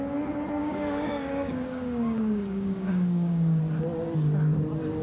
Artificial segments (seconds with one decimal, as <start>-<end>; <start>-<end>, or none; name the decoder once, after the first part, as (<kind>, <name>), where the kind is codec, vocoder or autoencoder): 0.6-3.6 (codec, DAC)